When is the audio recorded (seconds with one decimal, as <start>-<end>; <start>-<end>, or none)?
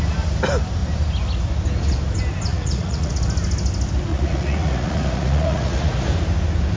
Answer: 0.0-2.5; 3.2-4.1; 5.9-6.8